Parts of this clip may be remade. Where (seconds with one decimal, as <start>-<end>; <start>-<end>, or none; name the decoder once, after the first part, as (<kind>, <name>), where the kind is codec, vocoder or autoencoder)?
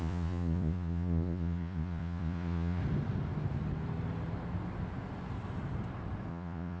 0.0-2.8 (vocoder, Vocos); 6.3-6.8